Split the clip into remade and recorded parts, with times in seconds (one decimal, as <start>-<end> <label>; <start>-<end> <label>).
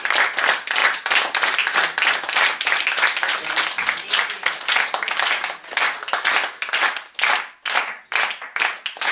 0.0-9.1 recorded